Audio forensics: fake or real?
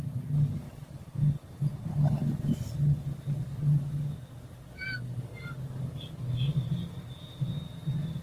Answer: real